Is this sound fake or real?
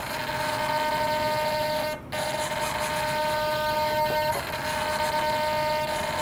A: real